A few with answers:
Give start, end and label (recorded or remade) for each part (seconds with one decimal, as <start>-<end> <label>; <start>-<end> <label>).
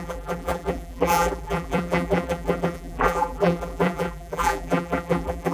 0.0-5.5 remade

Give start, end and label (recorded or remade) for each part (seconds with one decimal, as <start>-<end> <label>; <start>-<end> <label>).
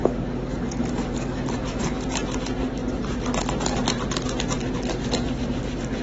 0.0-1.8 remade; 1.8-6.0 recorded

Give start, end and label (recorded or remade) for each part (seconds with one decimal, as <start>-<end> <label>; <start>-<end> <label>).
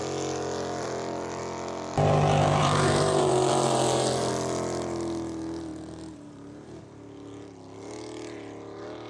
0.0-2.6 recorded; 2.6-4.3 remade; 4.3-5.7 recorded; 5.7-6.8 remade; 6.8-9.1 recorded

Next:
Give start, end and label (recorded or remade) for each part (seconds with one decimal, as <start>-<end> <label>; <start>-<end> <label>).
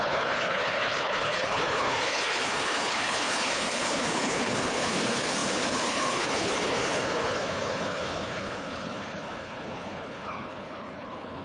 0.0-11.4 remade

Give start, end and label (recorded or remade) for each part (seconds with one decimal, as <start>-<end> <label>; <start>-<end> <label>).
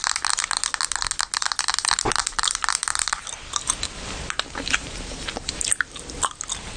0.0-6.8 recorded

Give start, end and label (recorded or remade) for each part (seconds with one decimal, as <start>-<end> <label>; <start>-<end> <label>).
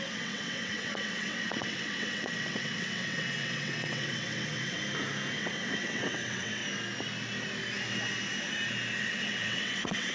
0.0-4.8 remade; 4.8-5.3 recorded; 5.3-6.6 remade; 6.6-9.0 recorded; 9.0-10.1 remade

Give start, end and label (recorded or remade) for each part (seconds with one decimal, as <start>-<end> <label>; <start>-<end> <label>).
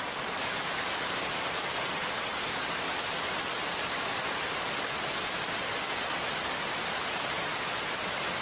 0.0-8.4 recorded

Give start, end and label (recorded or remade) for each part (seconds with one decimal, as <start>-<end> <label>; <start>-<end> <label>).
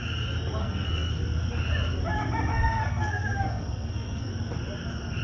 0.0-0.6 recorded; 0.6-1.1 remade; 1.1-2.5 recorded; 2.5-4.3 remade; 4.3-5.2 recorded